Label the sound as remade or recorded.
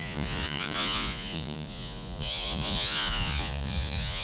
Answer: remade